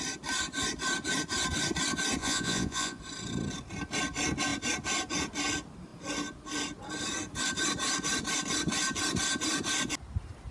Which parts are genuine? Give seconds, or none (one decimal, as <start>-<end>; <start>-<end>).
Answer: 0.0-2.2; 3.0-10.5